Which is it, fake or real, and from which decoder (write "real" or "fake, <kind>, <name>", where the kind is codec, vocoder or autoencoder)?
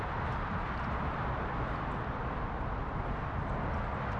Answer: real